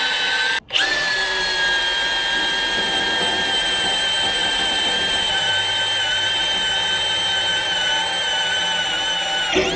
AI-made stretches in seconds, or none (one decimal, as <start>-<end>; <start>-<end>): 4.4-5.5